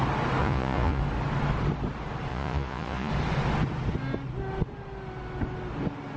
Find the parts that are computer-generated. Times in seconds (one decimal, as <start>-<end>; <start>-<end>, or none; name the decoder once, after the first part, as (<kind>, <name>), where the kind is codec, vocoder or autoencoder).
0.4-1.0 (vocoder, Vocos); 2.3-3.1